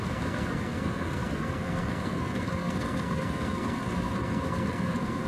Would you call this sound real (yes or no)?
no